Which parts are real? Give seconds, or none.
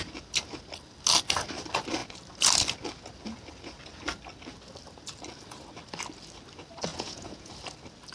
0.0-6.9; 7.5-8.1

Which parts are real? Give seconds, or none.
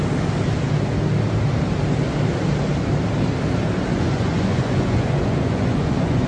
0.0-3.9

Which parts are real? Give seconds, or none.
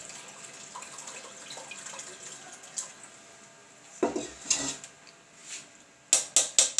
0.0-6.8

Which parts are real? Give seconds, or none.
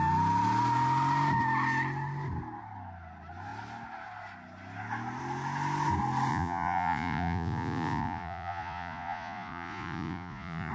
0.0-6.3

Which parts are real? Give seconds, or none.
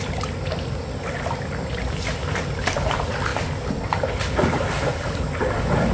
0.0-5.9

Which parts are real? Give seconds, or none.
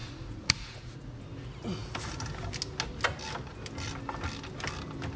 1.2-5.2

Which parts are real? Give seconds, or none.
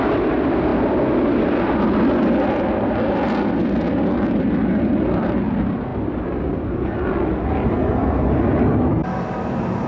0.0-9.9